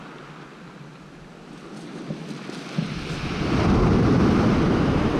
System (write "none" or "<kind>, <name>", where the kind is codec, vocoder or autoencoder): none